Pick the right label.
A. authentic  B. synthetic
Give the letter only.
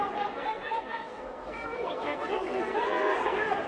B